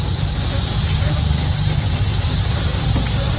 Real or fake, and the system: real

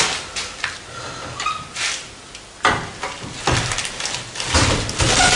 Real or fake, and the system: real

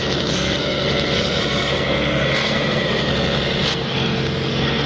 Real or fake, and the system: fake, codec, SNAC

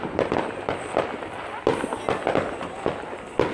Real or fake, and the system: real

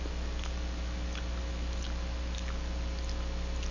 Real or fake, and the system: real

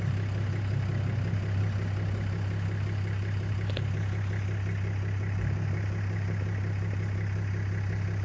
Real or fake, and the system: real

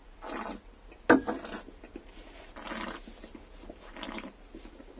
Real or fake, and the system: real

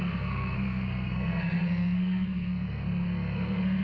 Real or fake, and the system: fake, codec, SNAC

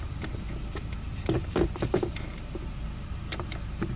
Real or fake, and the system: fake, vocoder, BigVGAN v2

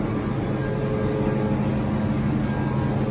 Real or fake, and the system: real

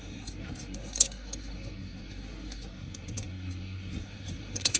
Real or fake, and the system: fake, codec, SNAC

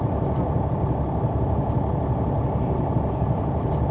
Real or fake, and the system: real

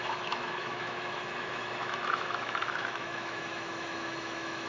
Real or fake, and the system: fake, autoencoder, DAC-VAE